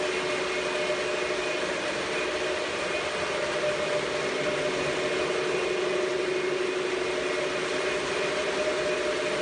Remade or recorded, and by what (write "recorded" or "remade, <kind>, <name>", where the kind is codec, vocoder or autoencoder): recorded